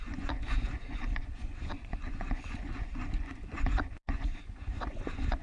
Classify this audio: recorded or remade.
remade